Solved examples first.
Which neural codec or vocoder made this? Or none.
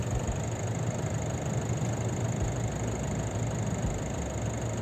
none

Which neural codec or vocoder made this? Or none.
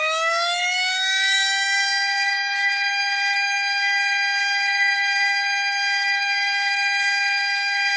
codec, DAC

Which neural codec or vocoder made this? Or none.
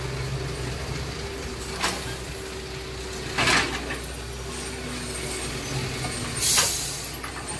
none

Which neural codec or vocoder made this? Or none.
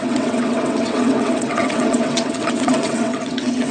vocoder, WaveNeXt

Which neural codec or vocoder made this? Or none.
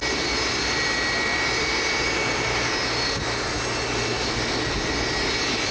none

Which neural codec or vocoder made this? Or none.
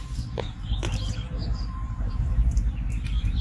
vocoder, BigVGAN v2